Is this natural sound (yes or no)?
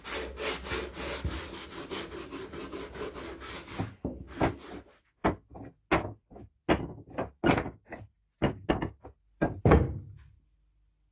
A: yes